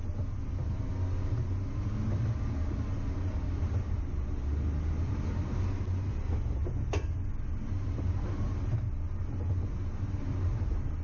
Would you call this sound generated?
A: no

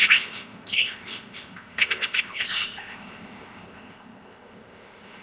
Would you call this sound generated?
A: yes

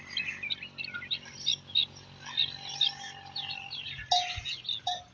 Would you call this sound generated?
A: no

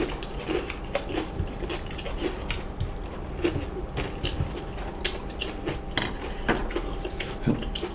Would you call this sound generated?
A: no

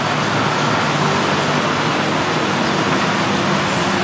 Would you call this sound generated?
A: no